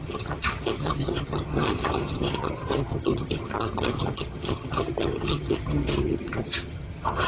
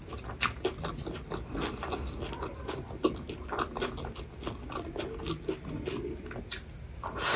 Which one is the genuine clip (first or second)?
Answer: second